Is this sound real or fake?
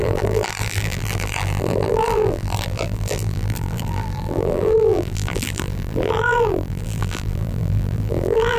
fake